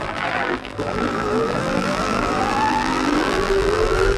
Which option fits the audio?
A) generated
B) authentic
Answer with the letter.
A